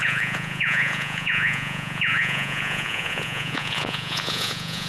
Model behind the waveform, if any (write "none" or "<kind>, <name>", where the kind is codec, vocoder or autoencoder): vocoder, Vocos